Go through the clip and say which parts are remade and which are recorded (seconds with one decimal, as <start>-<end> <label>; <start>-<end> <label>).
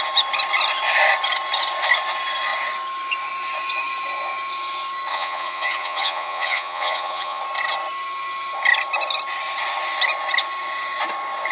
0.0-5.1 recorded; 5.1-7.4 remade; 7.4-11.5 recorded